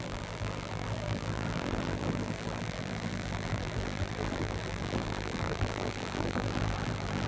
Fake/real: fake